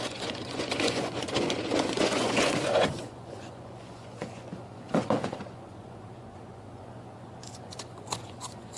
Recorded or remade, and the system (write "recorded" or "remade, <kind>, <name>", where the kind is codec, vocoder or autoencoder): remade, vocoder, Vocos